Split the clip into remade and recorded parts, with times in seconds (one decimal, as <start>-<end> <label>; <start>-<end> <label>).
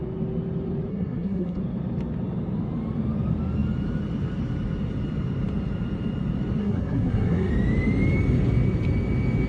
0.0-0.9 recorded; 0.9-1.6 remade; 1.6-6.6 recorded; 6.6-7.5 remade; 7.5-9.5 recorded